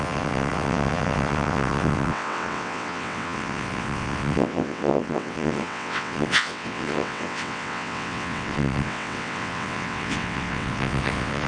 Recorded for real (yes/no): no